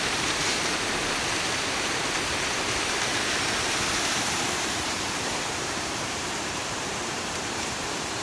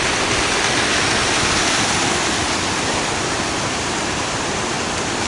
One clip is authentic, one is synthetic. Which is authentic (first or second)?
second